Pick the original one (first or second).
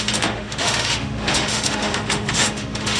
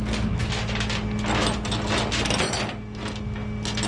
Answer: second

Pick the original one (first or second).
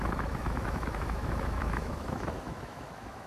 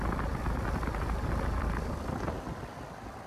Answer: second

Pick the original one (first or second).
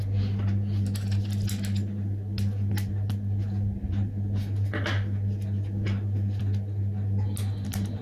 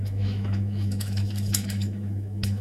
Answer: first